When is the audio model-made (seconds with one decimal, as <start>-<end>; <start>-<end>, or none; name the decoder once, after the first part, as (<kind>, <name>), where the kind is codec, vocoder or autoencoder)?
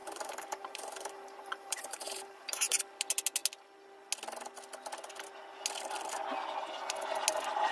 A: 0.0-2.8 (vocoder, BigVGAN v2)